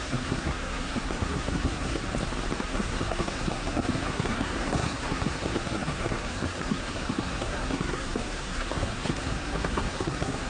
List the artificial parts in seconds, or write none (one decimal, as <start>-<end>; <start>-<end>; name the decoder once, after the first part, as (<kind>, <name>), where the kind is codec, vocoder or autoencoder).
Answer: 0.0-2.0 (codec, SNAC); 2.6-10.5